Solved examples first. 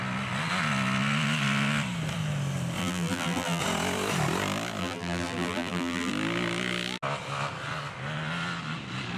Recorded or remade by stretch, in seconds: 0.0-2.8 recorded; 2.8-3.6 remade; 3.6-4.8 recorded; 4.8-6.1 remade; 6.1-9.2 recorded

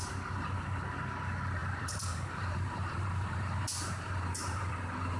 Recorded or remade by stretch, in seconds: 0.0-1.6 recorded; 1.6-4.7 remade; 4.7-5.2 recorded